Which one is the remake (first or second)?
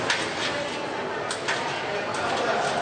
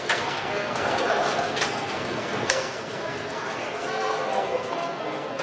second